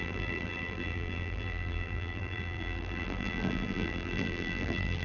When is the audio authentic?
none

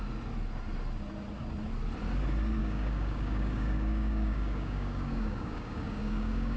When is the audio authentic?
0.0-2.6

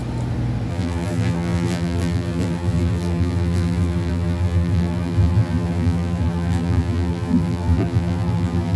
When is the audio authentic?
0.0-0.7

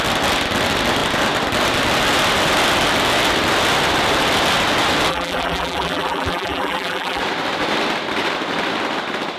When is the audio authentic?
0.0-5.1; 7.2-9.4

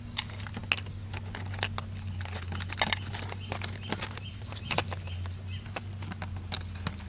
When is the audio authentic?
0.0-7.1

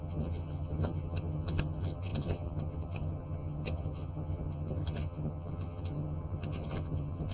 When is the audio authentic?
none

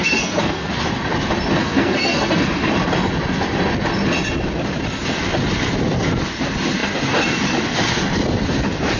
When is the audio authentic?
0.7-1.6; 2.7-9.0

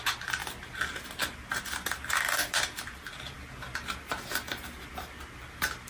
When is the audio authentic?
0.0-5.9